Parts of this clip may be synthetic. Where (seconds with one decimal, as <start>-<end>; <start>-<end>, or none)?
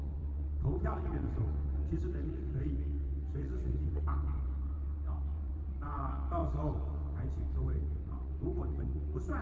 0.0-9.4